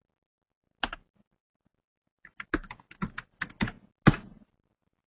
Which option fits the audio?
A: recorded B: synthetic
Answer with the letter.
A